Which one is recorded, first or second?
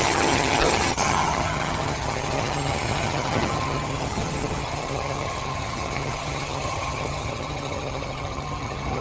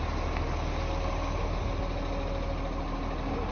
second